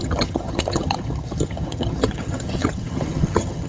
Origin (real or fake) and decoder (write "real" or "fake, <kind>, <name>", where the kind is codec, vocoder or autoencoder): fake, vocoder, HiFi-GAN